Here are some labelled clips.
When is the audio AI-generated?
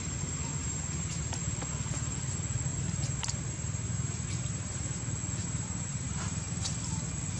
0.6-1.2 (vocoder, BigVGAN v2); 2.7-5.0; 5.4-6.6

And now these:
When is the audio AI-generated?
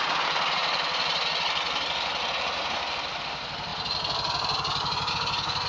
none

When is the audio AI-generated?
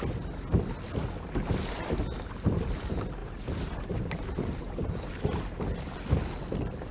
3.2-5.6 (vocoder, BigVGAN v2)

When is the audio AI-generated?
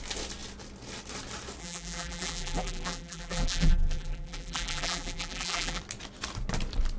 1.6-5.8 (vocoder, BigVGAN v2)